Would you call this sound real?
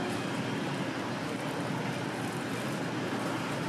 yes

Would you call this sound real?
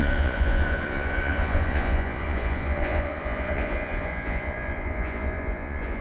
no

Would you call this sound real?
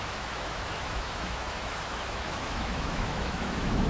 no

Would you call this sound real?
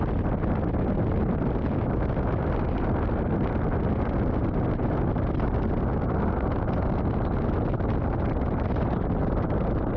yes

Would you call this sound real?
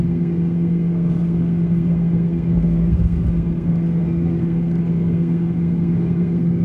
no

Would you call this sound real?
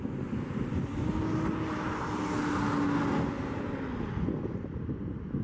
yes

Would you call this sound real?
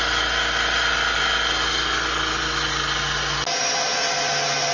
yes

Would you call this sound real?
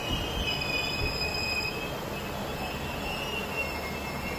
yes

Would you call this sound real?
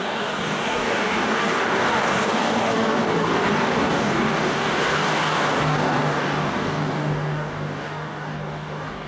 no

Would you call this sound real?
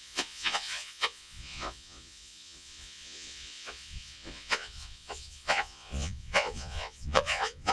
no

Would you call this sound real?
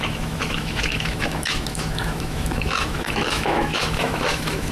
no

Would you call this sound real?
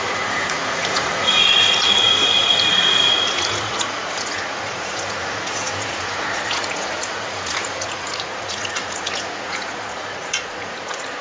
no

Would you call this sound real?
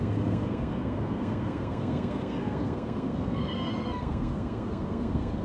no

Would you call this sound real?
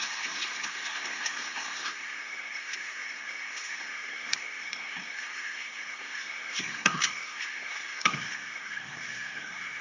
no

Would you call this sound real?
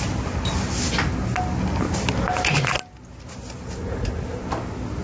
yes